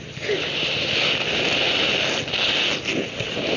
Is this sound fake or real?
real